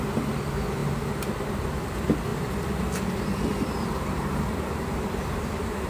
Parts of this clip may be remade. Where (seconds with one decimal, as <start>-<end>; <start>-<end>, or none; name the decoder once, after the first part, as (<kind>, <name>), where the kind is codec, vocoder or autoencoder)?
2.3-5.9 (vocoder, BigVGAN v2)